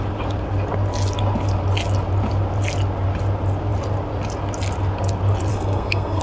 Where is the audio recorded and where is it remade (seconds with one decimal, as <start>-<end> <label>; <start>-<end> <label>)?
0.0-5.5 recorded; 5.5-6.2 remade